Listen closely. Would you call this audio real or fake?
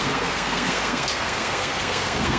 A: fake